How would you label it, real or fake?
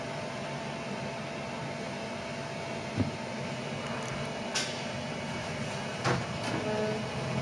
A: real